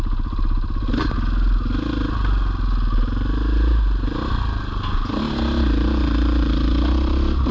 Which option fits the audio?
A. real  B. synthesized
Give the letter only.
A